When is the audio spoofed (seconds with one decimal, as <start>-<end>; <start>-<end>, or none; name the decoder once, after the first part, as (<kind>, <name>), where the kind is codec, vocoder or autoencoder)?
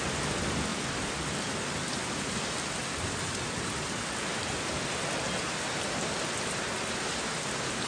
0.7-4.7 (vocoder, BigVGAN v2)